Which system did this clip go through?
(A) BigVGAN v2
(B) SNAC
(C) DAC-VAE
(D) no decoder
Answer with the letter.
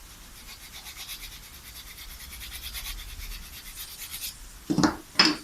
D